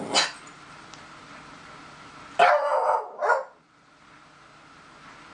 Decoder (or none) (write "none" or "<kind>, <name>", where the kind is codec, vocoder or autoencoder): none